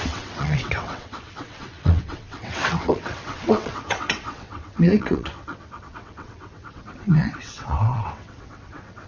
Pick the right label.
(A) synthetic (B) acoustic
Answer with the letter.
A